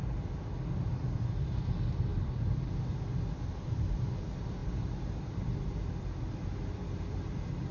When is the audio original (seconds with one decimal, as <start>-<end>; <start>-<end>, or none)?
0.0-1.0